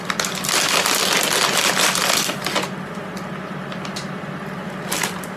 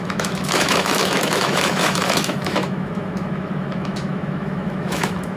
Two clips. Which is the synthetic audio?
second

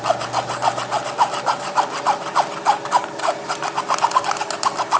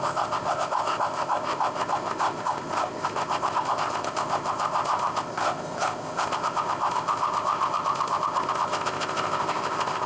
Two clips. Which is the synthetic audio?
second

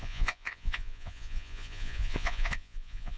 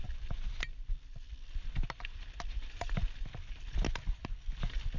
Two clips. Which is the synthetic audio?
first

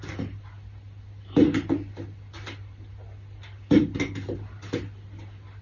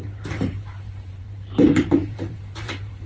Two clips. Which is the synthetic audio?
second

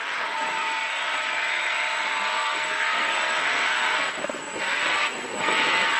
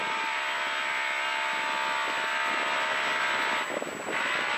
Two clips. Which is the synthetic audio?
first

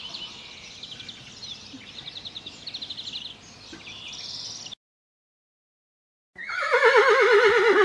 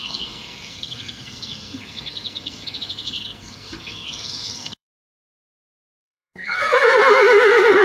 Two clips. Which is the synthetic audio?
second